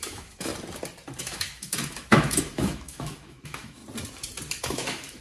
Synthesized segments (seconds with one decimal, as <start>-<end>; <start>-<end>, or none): 0.0-0.5; 1.2-3.8; 4.6-5.2